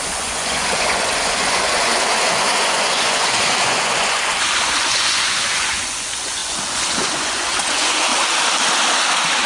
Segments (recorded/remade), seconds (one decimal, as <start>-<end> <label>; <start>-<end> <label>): 0.0-8.1 remade; 8.1-9.5 recorded